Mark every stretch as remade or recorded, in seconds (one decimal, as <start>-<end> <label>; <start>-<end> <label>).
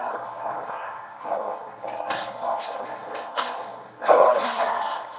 0.0-5.2 remade